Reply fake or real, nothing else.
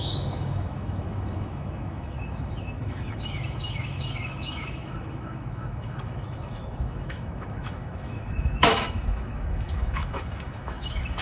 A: fake